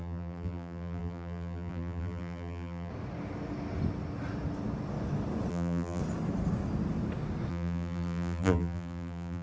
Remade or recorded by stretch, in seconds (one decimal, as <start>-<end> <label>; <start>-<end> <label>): 0.0-2.9 remade; 2.9-5.5 recorded; 5.5-6.0 remade; 6.0-7.5 recorded; 7.5-9.4 remade